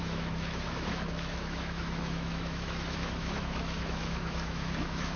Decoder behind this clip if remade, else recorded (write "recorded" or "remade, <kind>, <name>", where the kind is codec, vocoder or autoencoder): remade, autoencoder, DAC-VAE